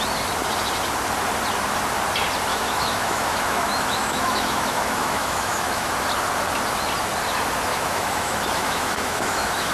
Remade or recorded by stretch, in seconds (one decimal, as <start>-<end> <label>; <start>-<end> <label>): 0.0-2.5 recorded; 2.5-5.9 remade; 5.9-7.7 recorded; 7.7-9.7 remade